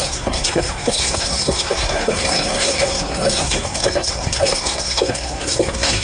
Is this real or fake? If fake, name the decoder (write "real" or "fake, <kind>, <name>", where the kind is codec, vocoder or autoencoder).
fake, codec, SNAC